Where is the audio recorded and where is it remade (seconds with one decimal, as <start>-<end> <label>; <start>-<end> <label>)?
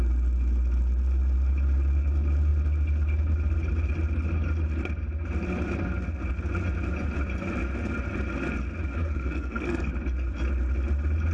0.0-9.0 recorded; 9.0-9.9 remade; 9.9-11.3 recorded